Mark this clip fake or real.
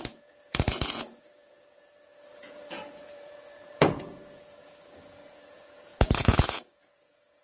fake